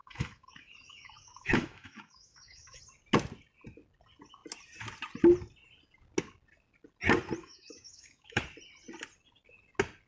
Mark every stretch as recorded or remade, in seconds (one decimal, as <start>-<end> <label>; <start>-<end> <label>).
0.0-2.8 remade; 2.8-7.4 recorded; 7.4-8.4 remade; 8.4-10.1 recorded